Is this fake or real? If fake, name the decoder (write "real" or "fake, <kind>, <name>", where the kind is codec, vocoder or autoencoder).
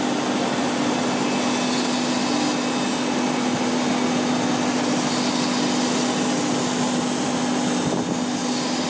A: real